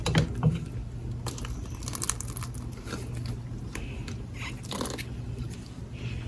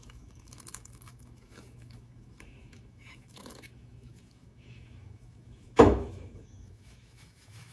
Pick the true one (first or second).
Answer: first